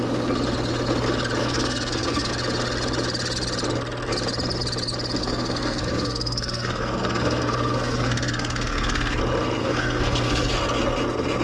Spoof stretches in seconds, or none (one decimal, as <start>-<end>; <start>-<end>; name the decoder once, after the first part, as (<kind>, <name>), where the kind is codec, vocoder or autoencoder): 1.4-2.3 (codec, SNAC); 5.2-9.2; 9.6-10.5